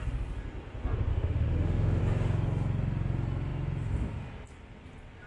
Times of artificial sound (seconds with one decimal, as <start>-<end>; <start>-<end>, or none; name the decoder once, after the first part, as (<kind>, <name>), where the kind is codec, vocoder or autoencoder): 1.1-2.0 (autoencoder, DAC-VAE)